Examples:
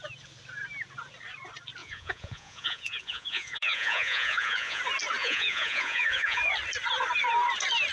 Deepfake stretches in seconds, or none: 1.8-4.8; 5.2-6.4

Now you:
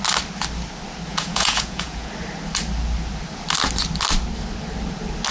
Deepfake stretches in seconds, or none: 1.1-2.1